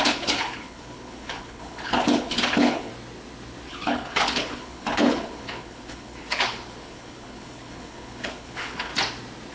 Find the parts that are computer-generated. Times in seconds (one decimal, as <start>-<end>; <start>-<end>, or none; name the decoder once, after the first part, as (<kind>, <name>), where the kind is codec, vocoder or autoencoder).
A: 0.0-2.9 (codec, HILCodec); 3.7-8.9